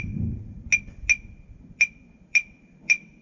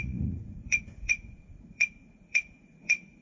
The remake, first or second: second